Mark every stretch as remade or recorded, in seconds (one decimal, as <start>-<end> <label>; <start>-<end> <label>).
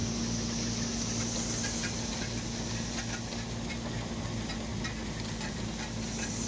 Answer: 0.0-6.5 recorded